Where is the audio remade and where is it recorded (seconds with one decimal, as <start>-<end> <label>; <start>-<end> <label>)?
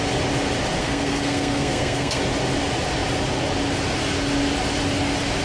0.0-0.8 recorded; 0.8-2.2 remade; 2.2-5.4 recorded